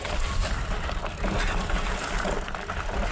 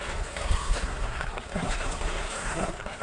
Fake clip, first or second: second